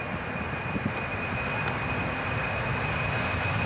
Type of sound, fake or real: real